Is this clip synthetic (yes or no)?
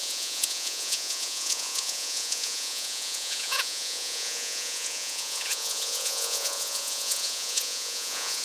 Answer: yes